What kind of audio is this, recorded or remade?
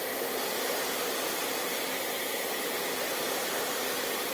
remade